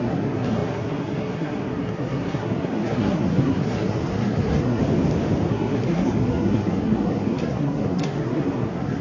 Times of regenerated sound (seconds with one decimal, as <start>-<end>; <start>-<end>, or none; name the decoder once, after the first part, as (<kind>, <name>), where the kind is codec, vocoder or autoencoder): 0.0-4.8 (codec, SNAC); 5.5-9.0

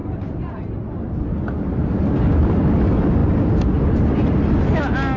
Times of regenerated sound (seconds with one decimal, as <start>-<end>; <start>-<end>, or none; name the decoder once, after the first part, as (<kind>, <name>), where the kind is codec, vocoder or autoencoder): none

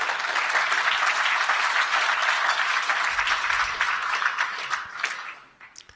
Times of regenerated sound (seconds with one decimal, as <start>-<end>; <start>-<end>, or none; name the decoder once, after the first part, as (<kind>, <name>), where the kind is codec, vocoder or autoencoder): none

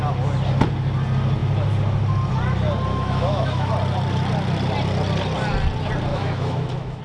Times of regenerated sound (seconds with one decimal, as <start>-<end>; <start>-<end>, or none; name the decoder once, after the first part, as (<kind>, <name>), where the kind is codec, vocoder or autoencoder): 2.9-3.7 (autoencoder, DAC-VAE); 6.1-7.0

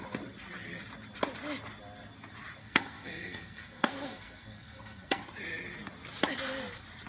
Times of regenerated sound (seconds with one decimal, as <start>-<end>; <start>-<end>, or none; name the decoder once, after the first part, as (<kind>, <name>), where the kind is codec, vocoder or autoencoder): 2.6-5.2 (codec, SNAC)

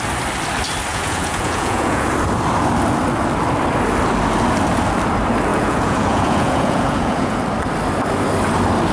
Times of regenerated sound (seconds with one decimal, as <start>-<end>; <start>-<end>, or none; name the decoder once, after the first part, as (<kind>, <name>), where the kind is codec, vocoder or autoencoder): 0.9-2.1 (vocoder, Vocos); 5.5-7.4

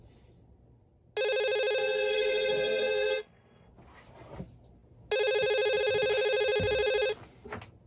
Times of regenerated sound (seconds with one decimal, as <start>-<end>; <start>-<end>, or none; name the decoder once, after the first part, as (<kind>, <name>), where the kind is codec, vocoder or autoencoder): 1.8-3.7 (codec, SNAC)